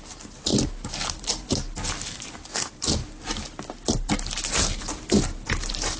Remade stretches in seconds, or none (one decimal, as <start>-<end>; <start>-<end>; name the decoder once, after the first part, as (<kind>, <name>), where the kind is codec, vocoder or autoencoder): none